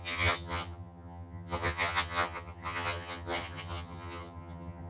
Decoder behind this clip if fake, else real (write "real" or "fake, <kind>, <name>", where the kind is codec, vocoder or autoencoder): fake, vocoder, HiFi-GAN